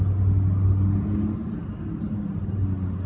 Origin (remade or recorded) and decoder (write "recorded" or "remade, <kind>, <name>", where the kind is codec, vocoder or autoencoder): recorded